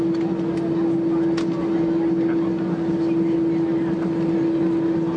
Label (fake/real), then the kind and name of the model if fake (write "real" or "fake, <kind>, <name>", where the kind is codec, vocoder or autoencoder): real